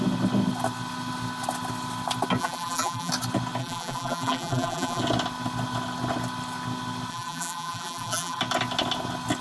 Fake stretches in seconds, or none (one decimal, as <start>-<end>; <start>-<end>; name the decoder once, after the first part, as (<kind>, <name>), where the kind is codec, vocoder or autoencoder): 2.4-3.1 (vocoder, BigVGAN v2); 3.6-5.0; 7.1-8.4